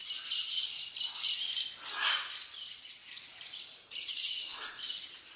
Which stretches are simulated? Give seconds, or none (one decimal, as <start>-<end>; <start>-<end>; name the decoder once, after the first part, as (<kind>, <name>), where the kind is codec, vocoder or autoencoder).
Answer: 0.0-0.9 (vocoder, BigVGAN v2); 3.0-4.3